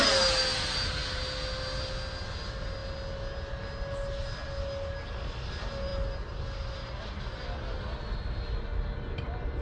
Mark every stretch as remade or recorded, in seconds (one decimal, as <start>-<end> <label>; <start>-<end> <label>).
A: 0.0-9.6 recorded